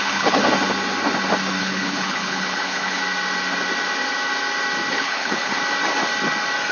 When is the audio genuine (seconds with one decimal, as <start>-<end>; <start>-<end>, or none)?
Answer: 0.4-1.6; 3.0-4.9; 5.6-6.7